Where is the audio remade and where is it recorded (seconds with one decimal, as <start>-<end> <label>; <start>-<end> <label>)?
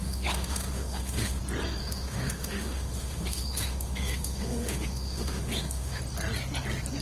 0.0-1.4 remade; 1.4-1.8 recorded; 1.8-6.0 remade; 6.0-7.0 recorded